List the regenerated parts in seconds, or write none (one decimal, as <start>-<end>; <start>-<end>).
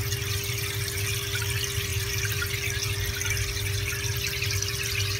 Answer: 1.9-2.4